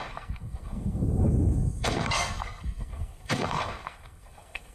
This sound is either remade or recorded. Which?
remade